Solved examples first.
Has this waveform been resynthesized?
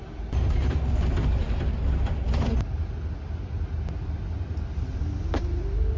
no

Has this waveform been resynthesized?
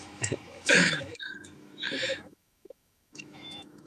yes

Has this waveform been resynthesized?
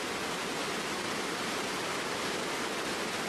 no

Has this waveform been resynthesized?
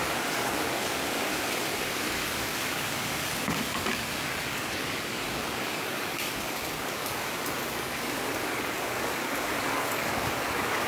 yes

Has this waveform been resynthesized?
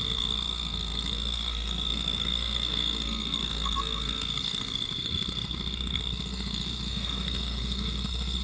yes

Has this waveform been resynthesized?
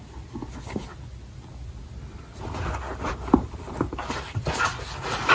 no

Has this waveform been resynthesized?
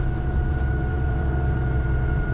yes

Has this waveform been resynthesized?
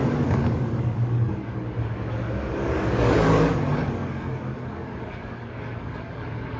yes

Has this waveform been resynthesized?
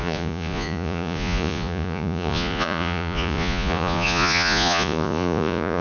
yes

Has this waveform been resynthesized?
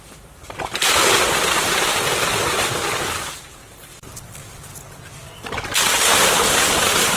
no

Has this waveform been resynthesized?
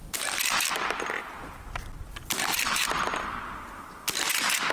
no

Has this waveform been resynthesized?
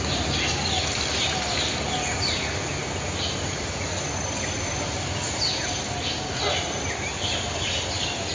no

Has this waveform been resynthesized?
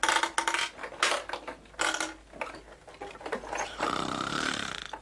no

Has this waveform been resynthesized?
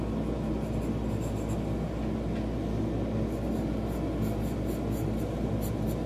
no